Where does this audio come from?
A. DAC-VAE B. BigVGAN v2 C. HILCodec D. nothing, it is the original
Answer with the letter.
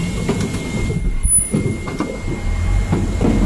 D